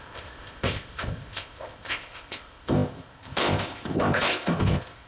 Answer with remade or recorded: remade